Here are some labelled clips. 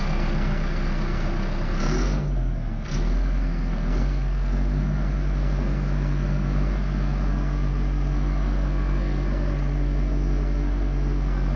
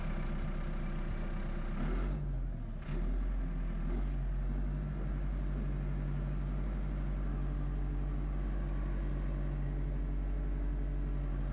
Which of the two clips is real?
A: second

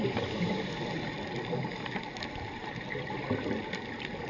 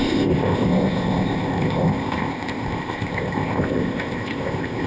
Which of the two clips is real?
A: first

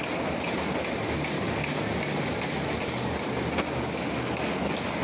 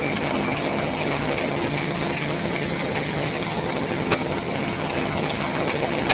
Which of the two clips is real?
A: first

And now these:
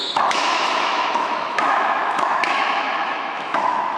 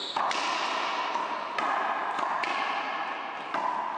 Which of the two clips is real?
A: second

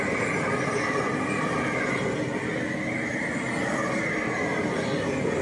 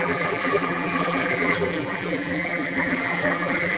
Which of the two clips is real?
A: first